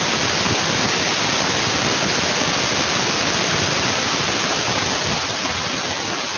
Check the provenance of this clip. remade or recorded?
recorded